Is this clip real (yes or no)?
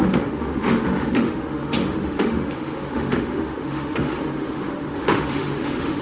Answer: no